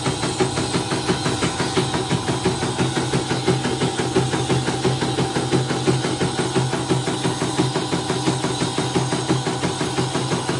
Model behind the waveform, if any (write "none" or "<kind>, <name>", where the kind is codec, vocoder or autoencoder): none